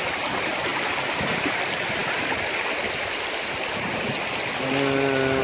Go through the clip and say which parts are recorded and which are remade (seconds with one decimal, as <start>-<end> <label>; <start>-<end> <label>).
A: 0.0-5.4 recorded